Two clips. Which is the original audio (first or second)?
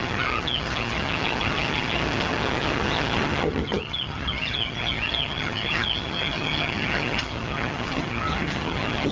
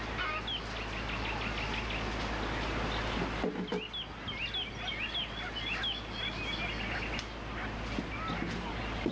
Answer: second